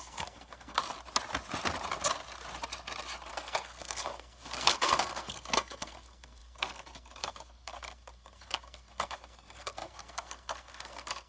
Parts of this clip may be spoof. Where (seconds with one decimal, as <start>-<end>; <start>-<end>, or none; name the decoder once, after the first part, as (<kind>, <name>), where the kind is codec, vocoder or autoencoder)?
0.0-0.8 (codec, SNAC); 3.3-11.3